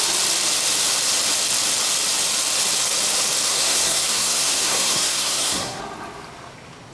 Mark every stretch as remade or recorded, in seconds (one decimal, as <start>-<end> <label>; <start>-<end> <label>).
0.0-3.5 recorded; 3.5-5.8 remade; 5.8-6.9 recorded